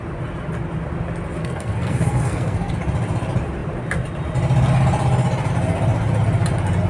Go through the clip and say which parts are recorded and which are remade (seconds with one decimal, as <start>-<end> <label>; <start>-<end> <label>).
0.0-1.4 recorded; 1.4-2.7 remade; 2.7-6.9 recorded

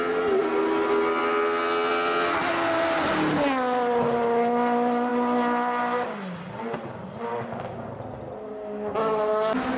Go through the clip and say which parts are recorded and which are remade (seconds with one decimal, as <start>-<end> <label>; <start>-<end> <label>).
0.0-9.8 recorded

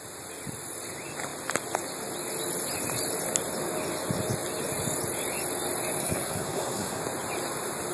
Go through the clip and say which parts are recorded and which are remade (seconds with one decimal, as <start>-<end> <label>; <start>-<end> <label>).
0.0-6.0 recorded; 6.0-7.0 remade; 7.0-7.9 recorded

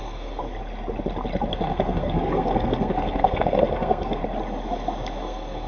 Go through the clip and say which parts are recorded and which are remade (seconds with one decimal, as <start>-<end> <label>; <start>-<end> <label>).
0.0-0.4 remade; 0.4-1.5 recorded; 1.5-4.2 remade; 4.2-5.2 recorded; 5.2-5.7 remade